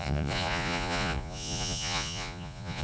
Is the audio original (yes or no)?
no